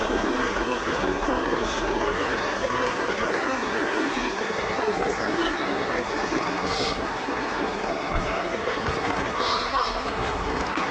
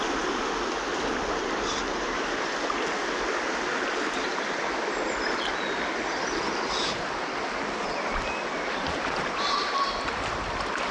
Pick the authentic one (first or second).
second